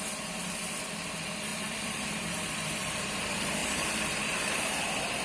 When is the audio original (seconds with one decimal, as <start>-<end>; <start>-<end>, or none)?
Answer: 0.0-1.5; 3.1-3.6; 4.2-5.2